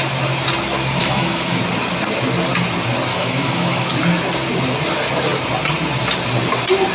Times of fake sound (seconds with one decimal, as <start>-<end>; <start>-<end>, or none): 1.0-1.6; 3.1-3.9